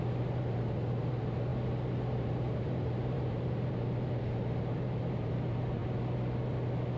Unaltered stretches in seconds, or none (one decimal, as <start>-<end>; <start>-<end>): 1.5-2.2; 5.8-7.0